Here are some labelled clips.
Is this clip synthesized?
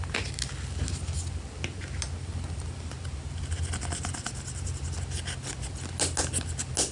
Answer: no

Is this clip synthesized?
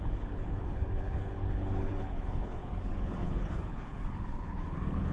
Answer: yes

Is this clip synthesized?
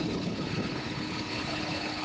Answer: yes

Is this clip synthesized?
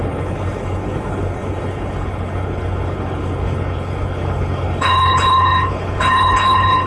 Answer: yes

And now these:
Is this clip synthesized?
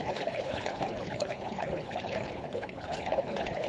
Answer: yes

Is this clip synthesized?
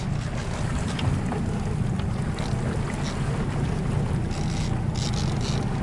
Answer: no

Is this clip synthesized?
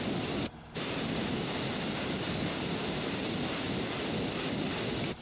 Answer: no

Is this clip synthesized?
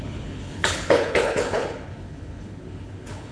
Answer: yes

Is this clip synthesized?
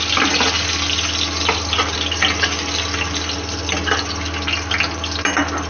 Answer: no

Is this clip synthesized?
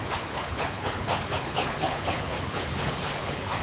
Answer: yes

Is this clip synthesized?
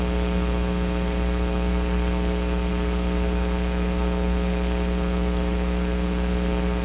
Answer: yes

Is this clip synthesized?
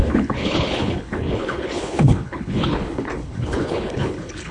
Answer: yes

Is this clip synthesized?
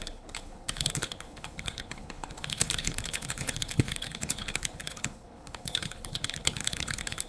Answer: yes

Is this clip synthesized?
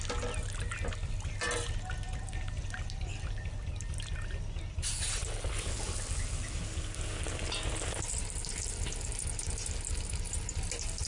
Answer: no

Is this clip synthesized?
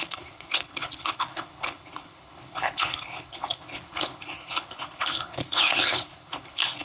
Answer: yes